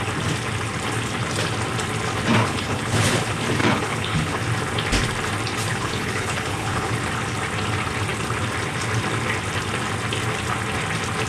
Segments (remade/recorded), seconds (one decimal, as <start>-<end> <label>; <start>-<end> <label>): 0.0-2.4 recorded; 2.4-3.2 remade; 3.2-3.6 recorded; 3.6-4.4 remade; 4.4-5.7 recorded; 5.7-6.9 remade; 6.9-11.3 recorded